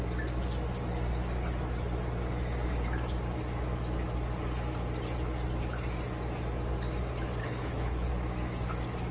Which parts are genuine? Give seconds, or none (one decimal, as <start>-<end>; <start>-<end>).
0.0-7.4; 8.1-9.1